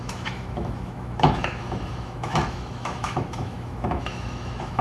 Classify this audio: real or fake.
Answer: fake